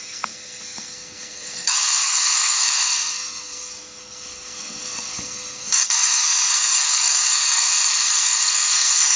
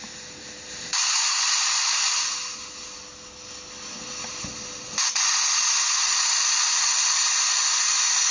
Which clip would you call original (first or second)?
second